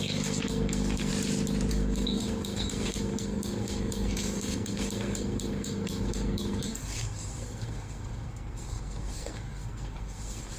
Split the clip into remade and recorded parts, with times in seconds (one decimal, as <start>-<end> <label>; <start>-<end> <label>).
0.0-1.1 remade; 1.1-1.7 recorded; 1.7-10.6 remade